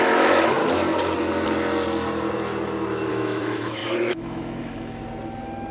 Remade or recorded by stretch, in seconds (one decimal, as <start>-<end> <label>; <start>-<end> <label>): 0.0-0.6 remade; 0.6-3.1 recorded; 3.1-5.0 remade; 5.0-5.7 recorded